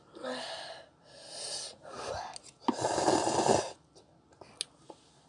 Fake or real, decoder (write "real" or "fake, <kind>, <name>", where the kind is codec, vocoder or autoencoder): real